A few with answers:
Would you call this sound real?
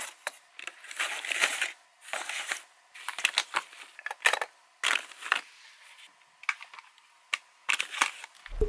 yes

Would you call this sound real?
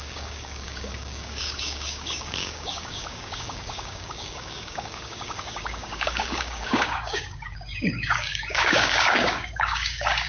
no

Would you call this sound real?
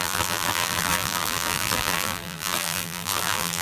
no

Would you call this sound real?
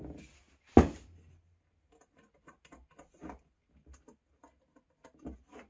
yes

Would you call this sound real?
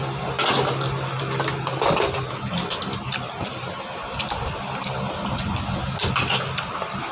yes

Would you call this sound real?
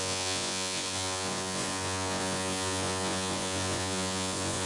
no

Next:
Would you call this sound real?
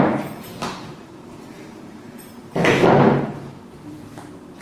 no